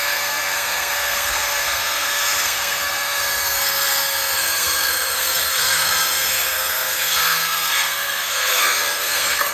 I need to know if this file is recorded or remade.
remade